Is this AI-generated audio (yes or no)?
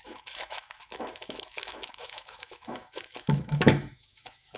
yes